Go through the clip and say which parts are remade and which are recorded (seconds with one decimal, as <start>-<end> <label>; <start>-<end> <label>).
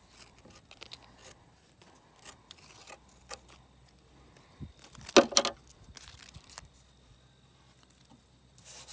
0.0-8.9 recorded